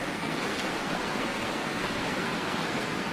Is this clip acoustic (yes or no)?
no